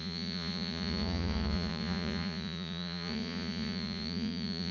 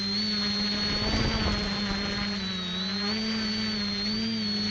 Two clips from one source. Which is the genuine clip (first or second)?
second